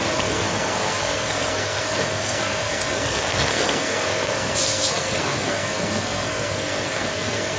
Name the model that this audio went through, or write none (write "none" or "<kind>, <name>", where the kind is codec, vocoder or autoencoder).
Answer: codec, SNAC